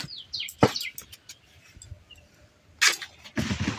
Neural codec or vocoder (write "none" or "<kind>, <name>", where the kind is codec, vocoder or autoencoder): none